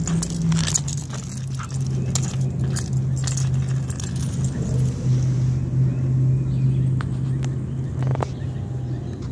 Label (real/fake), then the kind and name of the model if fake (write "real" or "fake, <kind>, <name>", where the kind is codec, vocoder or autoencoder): real